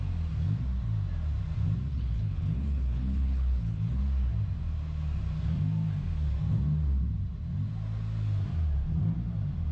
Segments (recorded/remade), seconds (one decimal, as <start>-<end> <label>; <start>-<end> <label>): 0.0-1.9 recorded; 1.9-4.0 remade; 4.0-9.7 recorded